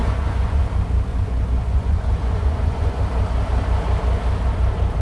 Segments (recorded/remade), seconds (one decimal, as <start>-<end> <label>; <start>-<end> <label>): 0.0-0.6 remade; 0.6-1.1 recorded; 1.1-3.0 remade; 3.0-5.0 recorded